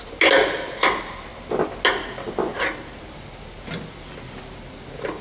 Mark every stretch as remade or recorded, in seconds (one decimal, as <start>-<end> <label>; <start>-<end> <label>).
0.0-5.2 recorded